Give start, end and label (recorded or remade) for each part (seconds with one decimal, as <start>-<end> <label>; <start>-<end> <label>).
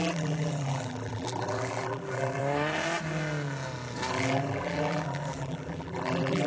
0.0-2.4 remade; 2.4-4.1 recorded; 4.1-6.5 remade